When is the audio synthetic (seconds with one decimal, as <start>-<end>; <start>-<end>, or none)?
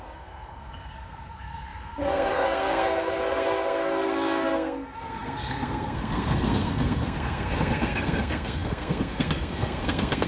0.0-10.3